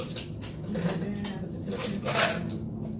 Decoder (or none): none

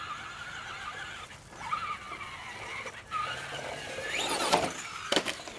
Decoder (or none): none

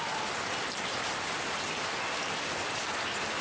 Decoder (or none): none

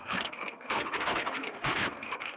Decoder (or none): autoencoder, DAC-VAE